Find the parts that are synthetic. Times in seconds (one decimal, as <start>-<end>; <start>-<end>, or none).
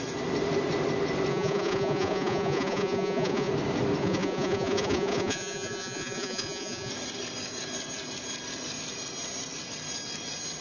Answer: 1.3-3.5; 4.0-6.9